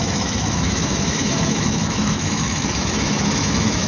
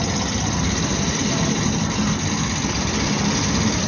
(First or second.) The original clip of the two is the second